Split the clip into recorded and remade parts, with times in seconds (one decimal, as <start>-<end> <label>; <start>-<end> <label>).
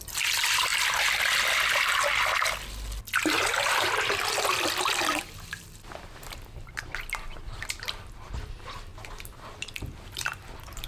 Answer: 0.0-0.7 remade; 0.7-4.7 recorded; 4.7-10.9 remade